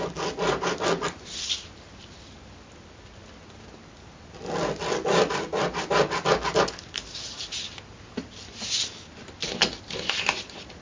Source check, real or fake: real